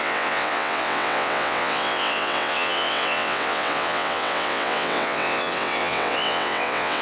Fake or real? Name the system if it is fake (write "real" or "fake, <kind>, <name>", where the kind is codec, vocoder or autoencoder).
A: fake, vocoder, WaveNeXt